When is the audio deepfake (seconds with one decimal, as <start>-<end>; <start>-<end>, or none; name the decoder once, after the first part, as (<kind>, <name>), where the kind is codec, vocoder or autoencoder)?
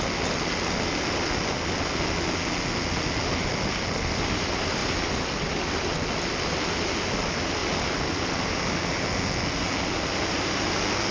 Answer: none